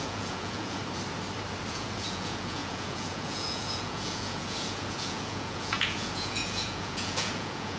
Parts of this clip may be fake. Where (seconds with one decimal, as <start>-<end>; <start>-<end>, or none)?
0.0-0.8; 1.7-7.8